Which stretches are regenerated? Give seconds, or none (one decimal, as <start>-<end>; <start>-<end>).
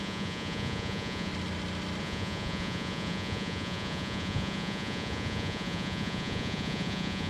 0.0-1.3; 2.0-7.3